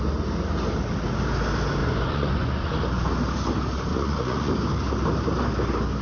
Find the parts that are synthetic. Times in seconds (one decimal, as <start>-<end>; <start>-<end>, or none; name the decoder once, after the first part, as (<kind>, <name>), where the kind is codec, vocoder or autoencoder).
1.8-2.7 (vocoder, Vocos); 3.9-4.5